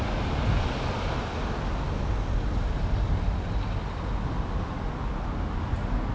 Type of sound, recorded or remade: recorded